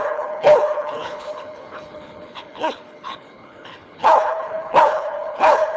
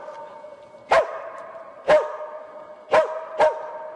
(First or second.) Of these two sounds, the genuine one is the second